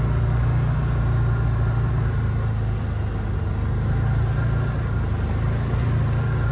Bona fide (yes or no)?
yes